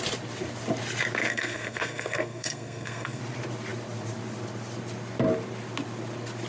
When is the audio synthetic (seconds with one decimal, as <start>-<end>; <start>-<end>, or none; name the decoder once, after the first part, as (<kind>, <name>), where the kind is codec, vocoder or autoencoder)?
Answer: 1.2-3.2 (codec, SNAC)